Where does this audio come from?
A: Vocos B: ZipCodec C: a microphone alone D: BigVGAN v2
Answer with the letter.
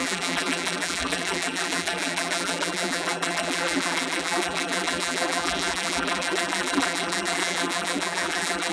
D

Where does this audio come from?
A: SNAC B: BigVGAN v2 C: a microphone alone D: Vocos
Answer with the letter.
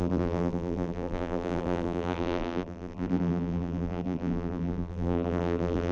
B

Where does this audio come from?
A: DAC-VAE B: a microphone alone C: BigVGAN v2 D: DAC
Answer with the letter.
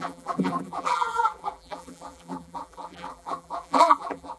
C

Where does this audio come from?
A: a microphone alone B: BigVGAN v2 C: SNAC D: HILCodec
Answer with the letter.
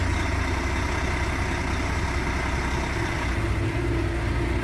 A